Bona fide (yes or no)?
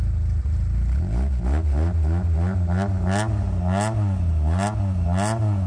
yes